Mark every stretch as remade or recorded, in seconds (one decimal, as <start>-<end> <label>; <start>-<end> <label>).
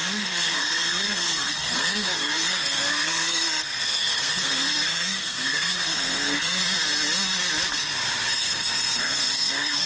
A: 0.0-6.6 remade; 6.6-8.2 recorded; 8.2-9.9 remade